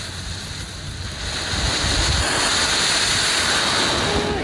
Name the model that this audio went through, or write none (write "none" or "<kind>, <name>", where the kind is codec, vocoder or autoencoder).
none